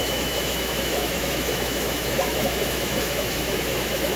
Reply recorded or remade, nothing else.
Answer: remade